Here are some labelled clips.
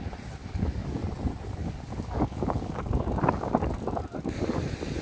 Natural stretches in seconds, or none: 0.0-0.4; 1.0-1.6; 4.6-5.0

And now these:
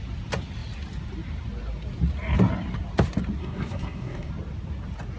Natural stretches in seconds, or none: 0.0-3.4; 4.3-5.2

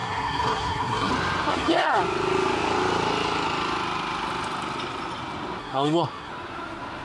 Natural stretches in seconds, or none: 1.1-1.5; 2.0-5.6; 6.3-7.0

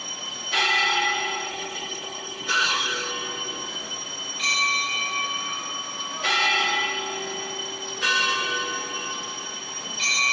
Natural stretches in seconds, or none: 0.0-1.5; 3.1-10.3

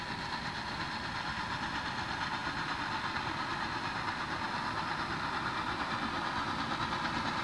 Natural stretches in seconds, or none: 0.0-7.4